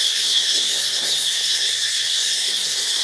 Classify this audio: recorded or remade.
remade